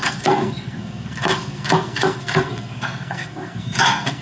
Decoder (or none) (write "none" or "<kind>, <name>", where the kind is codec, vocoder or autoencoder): codec, SNAC